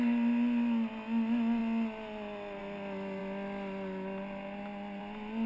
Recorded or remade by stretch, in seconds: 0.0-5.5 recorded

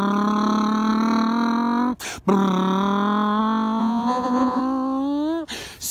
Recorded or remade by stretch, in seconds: 0.0-3.8 recorded; 3.8-4.6 remade; 4.6-5.9 recorded

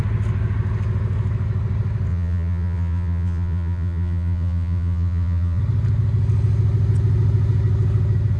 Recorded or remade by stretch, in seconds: 0.0-2.1 recorded; 2.1-5.6 remade; 5.6-8.4 recorded

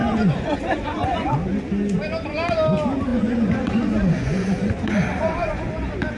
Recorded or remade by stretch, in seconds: 0.0-1.3 remade; 1.3-3.1 recorded; 3.1-5.7 remade; 5.7-6.2 recorded